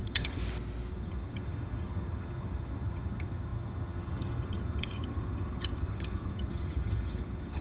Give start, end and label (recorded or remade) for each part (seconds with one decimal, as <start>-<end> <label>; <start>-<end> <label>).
0.0-0.4 remade; 0.4-0.9 recorded; 0.9-7.6 remade